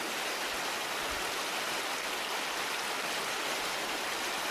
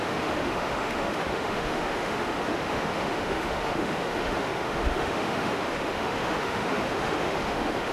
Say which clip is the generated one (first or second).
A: second